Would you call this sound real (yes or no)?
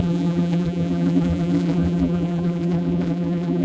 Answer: no